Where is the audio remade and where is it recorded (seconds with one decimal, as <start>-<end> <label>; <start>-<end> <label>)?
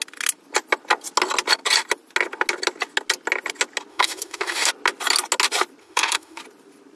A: 0.0-3.9 recorded; 3.9-4.7 remade; 4.7-5.8 recorded; 5.8-6.4 remade; 6.4-7.0 recorded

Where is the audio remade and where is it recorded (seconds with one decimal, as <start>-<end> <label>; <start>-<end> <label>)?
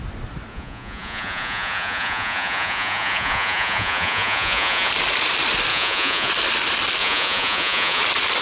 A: 0.0-0.5 recorded; 0.5-4.9 remade; 4.9-5.7 recorded; 5.7-6.3 remade; 6.3-7.0 recorded; 7.0-8.0 remade; 8.0-8.4 recorded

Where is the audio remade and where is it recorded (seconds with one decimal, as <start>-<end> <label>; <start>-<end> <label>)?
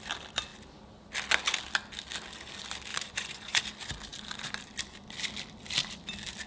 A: 0.0-2.9 recorded; 2.9-3.6 remade; 3.6-6.5 recorded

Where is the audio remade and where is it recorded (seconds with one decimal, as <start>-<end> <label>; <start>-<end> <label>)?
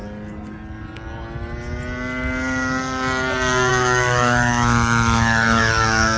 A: 0.0-3.7 recorded; 3.7-6.2 remade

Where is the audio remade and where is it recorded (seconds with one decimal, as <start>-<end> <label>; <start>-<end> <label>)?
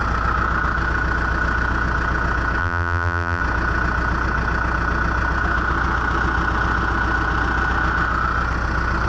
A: 0.0-2.6 recorded; 2.6-3.4 remade; 3.4-9.1 recorded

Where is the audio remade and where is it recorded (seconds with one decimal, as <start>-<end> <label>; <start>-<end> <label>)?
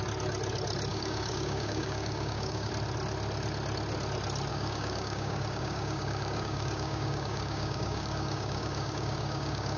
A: 0.0-0.9 recorded; 0.9-2.7 remade; 2.7-4.5 recorded; 4.5-9.8 remade